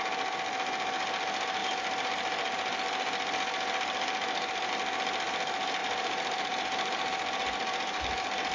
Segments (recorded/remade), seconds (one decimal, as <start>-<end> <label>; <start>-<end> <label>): 0.0-5.8 recorded; 5.8-8.0 remade; 8.0-8.5 recorded